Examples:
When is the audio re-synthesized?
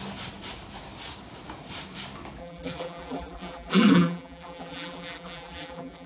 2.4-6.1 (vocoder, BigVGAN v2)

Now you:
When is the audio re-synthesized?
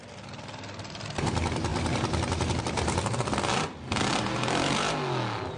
none